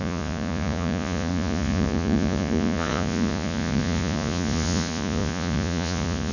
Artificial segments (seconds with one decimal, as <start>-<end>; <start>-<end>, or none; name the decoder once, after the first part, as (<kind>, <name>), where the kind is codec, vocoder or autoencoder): 0.0-6.3 (vocoder, Vocos)